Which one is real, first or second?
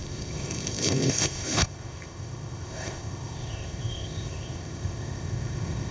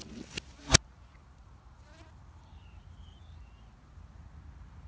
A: second